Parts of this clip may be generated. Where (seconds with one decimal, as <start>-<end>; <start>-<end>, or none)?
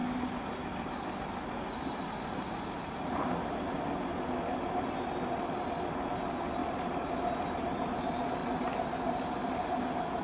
6.6-8.0; 8.4-9.1